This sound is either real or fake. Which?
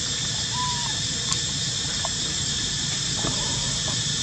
fake